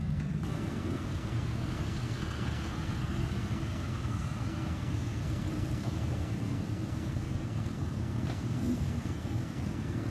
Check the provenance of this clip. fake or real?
fake